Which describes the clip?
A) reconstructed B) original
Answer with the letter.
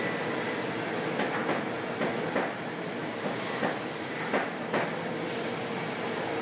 B